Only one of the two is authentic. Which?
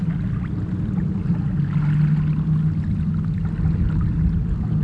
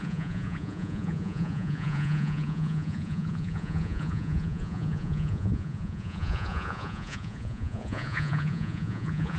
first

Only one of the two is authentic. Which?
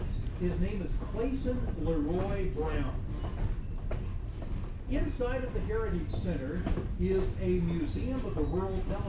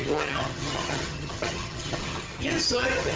first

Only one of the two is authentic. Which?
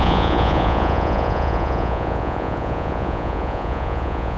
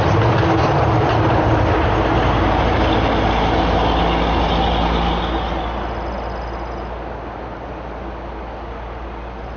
second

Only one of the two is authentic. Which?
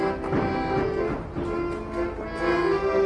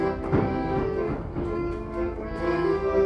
first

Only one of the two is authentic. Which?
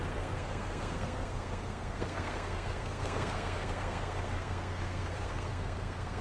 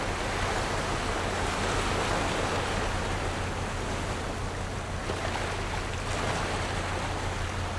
second